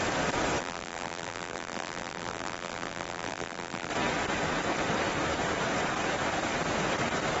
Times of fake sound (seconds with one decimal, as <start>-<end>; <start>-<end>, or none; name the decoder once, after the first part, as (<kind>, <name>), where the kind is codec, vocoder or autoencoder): 0.6-3.9 (vocoder, BigVGAN v2)